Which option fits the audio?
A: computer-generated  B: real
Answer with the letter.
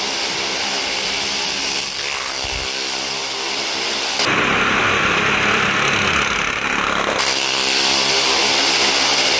B